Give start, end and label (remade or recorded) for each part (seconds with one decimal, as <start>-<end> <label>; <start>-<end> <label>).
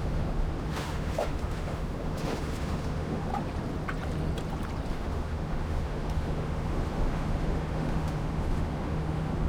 0.0-3.3 remade; 3.3-4.9 recorded; 4.9-9.5 remade